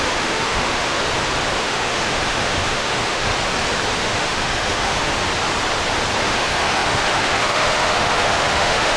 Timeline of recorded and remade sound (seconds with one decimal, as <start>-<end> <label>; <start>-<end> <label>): 0.0-1.0 remade; 1.0-1.6 recorded; 1.6-3.3 remade; 3.3-4.0 recorded; 4.0-5.1 remade; 5.1-6.2 recorded; 6.2-9.0 remade

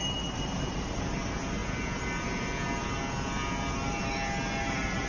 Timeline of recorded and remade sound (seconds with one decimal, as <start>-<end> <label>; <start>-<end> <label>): 0.0-5.1 recorded

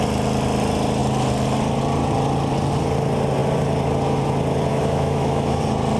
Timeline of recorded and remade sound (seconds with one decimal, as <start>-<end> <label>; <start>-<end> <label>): 0.0-4.7 recorded; 4.7-5.6 remade; 5.6-6.0 recorded

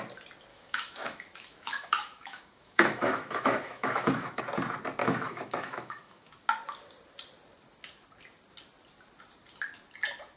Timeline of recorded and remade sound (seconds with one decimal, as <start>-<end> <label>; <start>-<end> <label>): 0.0-0.5 recorded; 0.5-4.4 remade; 4.4-5.0 recorded; 5.0-6.3 remade; 6.3-10.4 recorded

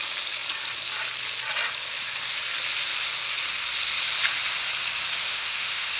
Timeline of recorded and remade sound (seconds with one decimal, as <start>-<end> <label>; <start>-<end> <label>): 0.0-5.2 recorded; 5.2-6.0 remade

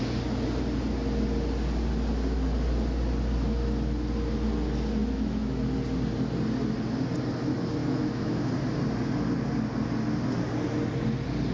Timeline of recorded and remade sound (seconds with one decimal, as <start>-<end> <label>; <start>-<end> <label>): 0.0-5.0 recorded; 5.0-5.6 remade; 5.6-7.8 recorded; 7.8-8.5 remade; 8.5-11.5 recorded

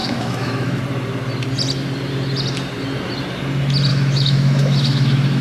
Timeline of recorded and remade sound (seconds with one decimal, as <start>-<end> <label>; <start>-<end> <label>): 0.0-0.8 remade; 0.8-3.9 recorded; 3.9-5.4 remade